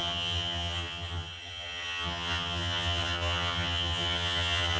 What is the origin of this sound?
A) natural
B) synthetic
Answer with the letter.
B